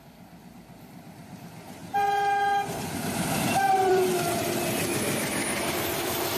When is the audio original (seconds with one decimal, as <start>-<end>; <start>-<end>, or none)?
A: 1.8-2.7; 4.1-5.7